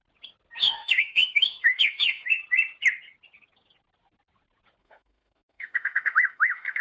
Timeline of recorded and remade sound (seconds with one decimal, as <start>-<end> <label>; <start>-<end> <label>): 0.0-0.6 recorded; 0.6-2.4 remade; 2.4-4.8 recorded; 4.8-6.8 remade